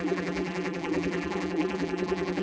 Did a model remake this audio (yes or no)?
yes